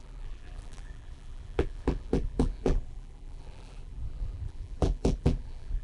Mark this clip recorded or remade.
remade